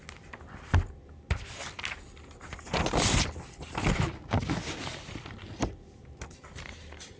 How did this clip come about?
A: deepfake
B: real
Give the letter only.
B